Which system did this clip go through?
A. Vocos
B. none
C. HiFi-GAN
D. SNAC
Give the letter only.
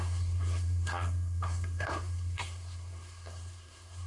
D